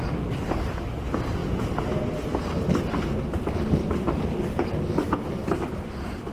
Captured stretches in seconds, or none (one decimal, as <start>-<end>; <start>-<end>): 0.0-6.3